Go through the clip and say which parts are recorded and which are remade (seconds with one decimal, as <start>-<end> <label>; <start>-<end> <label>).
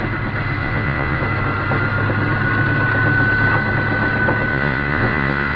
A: 0.0-0.6 recorded; 0.6-1.2 remade; 1.2-4.5 recorded; 4.5-5.6 remade